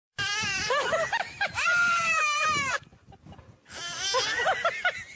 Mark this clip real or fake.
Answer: fake